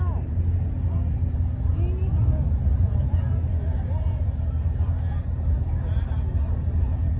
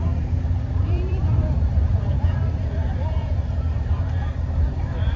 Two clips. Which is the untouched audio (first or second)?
first